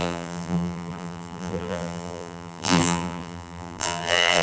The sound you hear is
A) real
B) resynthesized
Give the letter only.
B